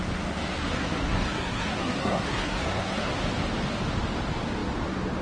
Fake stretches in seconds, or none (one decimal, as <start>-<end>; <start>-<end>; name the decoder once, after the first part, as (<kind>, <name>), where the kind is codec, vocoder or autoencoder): 0.6-3.1 (codec, SNAC)

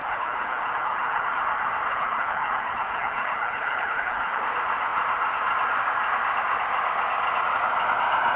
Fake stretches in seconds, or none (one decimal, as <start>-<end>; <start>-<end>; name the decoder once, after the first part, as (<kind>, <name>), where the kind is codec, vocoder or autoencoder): 0.0-1.4 (codec, HILCodec); 1.9-4.4

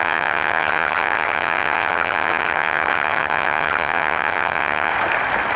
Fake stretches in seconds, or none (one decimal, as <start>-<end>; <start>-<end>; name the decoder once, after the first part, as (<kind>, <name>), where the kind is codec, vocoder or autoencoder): 0.0-4.9 (vocoder, HiFi-GAN)

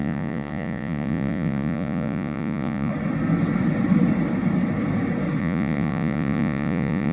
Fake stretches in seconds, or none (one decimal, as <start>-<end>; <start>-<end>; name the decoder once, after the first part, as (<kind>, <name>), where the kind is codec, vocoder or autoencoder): 0.0-2.9 (vocoder, Vocos); 5.4-7.1

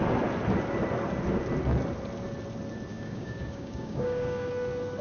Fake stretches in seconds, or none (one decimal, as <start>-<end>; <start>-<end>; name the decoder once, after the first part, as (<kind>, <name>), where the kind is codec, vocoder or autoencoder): 2.9-4.5 (codec, DAC)

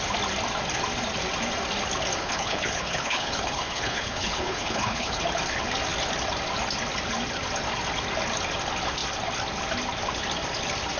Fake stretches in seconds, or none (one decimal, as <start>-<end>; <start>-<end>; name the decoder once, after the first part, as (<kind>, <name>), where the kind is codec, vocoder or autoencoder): 2.2-5.2 (codec, HILCodec)

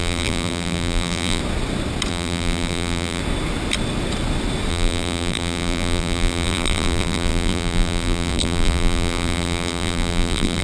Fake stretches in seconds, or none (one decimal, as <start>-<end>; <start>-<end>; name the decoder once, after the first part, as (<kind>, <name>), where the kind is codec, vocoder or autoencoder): 0.0-1.4 (vocoder, BigVGAN v2); 2.1-3.2; 4.7-10.6